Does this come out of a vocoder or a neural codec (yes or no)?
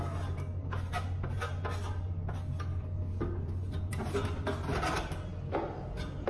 no